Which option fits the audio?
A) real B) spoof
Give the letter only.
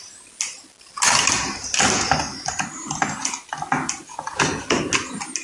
A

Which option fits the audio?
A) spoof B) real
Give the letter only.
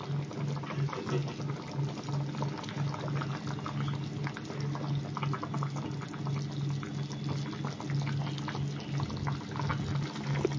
B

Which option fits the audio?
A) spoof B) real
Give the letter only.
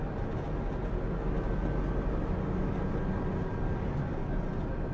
B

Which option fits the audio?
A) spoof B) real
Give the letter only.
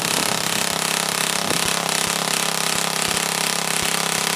B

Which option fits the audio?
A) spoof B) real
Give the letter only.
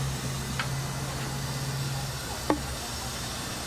B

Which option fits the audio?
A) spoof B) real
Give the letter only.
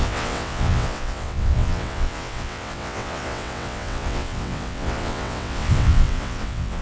A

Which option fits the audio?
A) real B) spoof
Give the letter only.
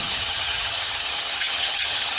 B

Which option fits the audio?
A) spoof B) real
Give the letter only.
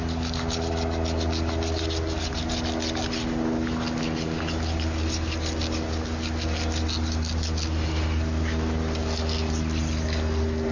B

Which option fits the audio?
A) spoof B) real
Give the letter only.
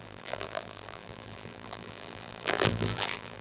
A